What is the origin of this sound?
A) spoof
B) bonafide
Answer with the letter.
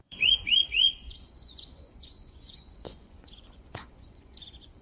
A